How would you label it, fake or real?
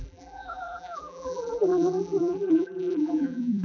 fake